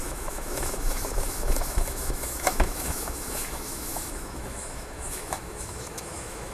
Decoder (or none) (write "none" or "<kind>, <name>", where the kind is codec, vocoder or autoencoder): autoencoder, DAC-VAE